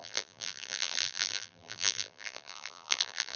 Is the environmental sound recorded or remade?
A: remade